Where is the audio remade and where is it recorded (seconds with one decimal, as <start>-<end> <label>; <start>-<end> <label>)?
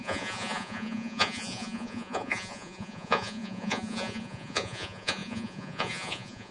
0.0-6.5 remade